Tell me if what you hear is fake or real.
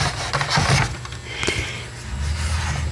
real